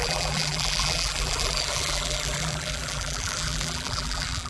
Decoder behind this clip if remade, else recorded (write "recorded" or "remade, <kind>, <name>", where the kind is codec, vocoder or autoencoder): remade, vocoder, BigVGAN v2